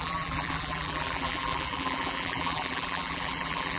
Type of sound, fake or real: fake